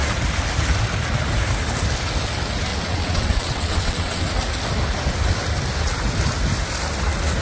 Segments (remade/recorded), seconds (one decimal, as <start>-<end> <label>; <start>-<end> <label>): 0.0-2.7 recorded; 2.7-4.2 remade; 4.2-7.4 recorded